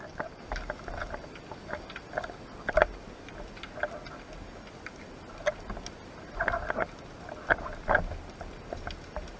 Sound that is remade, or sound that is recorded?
recorded